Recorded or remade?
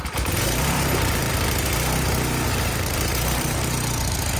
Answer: remade